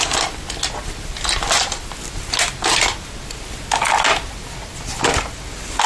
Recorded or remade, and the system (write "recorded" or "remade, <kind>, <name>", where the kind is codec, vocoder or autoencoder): recorded